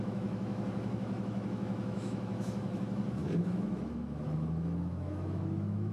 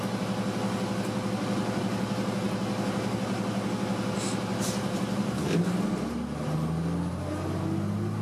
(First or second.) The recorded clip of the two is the second